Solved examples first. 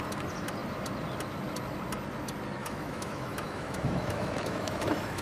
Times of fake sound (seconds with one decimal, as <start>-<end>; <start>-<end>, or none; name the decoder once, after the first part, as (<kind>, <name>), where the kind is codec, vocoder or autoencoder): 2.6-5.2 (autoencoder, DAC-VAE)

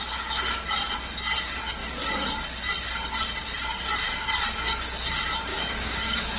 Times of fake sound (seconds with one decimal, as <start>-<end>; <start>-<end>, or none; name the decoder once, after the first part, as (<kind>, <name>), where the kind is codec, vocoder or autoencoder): 5.5-6.4 (codec, DAC)

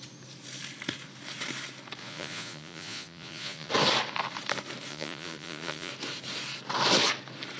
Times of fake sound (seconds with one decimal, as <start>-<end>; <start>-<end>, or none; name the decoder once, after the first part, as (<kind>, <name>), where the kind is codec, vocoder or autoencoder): 2.0-3.7 (vocoder, Vocos); 4.9-5.9

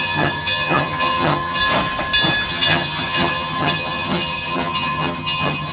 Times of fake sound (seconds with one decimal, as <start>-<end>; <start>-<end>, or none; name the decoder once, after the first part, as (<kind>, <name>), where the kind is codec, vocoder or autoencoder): 0.0-1.6 (vocoder, HiFi-GAN); 2.5-5.7